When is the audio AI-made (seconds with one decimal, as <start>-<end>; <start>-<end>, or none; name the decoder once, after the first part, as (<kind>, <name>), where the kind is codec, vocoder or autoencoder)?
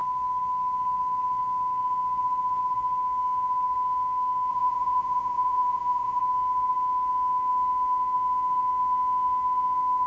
4.5-6.2 (vocoder, Vocos)